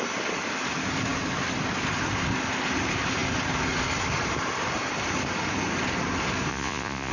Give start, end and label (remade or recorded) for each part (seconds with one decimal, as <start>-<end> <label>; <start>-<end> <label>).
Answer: 0.0-6.5 recorded; 6.5-7.1 remade